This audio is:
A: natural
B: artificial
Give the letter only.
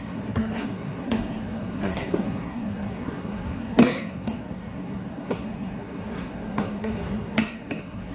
B